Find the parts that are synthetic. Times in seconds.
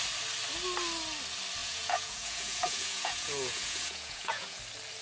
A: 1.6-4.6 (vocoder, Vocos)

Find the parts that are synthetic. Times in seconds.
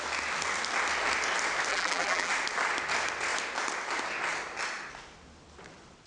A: 1.7-2.3 (vocoder, BigVGAN v2)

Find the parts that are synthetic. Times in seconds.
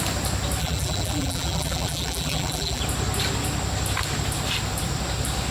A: 0.6-2.8 (vocoder, BigVGAN v2)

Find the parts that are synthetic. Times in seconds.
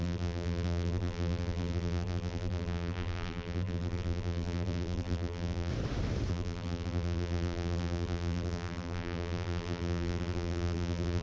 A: 0.0-5.7 (vocoder, BigVGAN v2); 6.3-11.2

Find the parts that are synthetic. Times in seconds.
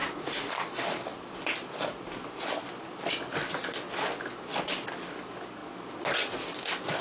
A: 0.0-0.5 (vocoder, Vocos)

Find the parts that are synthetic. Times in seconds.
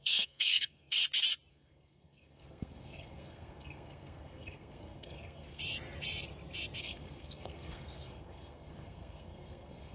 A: 0.0-1.0 (codec, SNAC); 1.5-5.6; 6.8-9.9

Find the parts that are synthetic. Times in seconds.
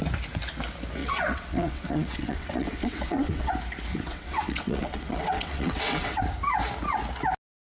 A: 1.0-3.5 (vocoder, WaveNeXt); 3.9-6.2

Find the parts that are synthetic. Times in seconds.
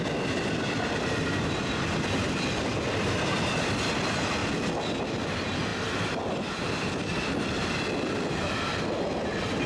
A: none